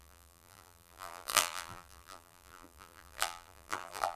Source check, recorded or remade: remade